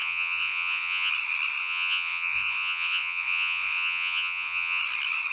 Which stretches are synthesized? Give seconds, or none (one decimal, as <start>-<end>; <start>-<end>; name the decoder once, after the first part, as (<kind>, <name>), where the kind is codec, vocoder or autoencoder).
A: 0.0-1.1 (vocoder, Vocos); 1.6-4.8